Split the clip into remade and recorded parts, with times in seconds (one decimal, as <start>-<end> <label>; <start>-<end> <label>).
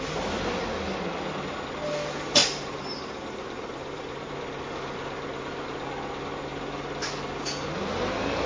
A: 0.0-2.4 recorded; 2.4-4.3 remade; 4.3-8.5 recorded